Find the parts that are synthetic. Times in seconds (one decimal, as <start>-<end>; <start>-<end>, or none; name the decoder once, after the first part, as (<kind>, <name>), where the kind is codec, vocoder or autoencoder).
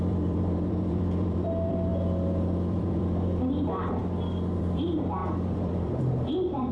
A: 0.0-4.0 (vocoder, BigVGAN v2); 4.6-6.7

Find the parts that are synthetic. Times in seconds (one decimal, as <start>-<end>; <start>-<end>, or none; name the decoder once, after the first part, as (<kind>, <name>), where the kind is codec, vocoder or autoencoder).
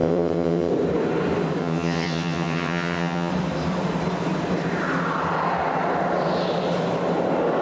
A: 0.0-0.7 (vocoder, HiFi-GAN); 1.6-3.3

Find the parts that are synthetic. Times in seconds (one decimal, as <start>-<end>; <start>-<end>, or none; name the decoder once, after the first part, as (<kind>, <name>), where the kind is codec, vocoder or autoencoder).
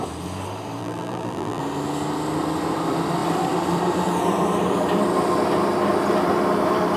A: 0.8-1.6 (vocoder, BigVGAN v2)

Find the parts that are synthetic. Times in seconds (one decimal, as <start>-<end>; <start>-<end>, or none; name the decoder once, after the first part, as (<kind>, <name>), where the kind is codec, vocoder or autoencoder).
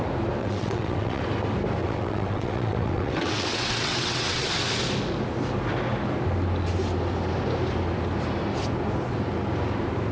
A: 0.4-1.2 (vocoder, WaveNeXt); 1.8-4.5